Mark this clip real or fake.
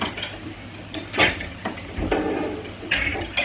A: real